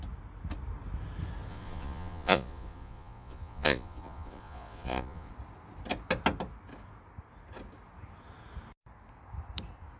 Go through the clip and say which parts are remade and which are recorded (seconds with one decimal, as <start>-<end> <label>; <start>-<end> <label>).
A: 0.0-1.5 recorded; 1.5-5.3 remade; 5.3-10.0 recorded